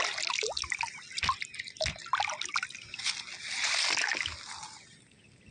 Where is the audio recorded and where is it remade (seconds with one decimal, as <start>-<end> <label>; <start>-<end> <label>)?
0.0-5.5 recorded